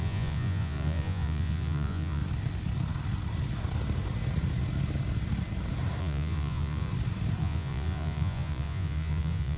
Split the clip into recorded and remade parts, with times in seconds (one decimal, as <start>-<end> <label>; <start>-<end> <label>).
0.0-2.2 remade; 2.2-6.0 recorded; 6.0-6.9 remade; 6.9-7.4 recorded; 7.4-9.6 remade